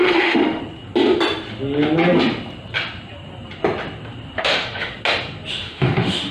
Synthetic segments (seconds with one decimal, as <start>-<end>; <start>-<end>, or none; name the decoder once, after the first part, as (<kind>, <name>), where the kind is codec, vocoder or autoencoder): 0.0-0.6 (autoencoder, DAC-VAE); 4.4-4.9; 5.5-6.3